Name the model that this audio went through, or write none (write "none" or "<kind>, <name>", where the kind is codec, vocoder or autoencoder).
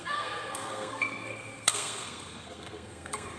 codec, SNAC